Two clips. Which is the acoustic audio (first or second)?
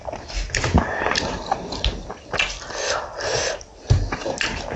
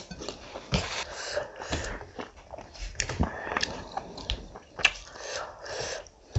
first